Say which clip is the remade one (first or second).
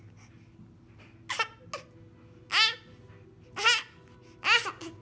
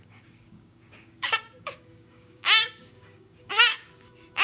second